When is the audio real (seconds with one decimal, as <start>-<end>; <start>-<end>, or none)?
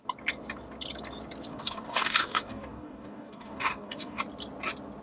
0.0-1.5; 4.2-5.0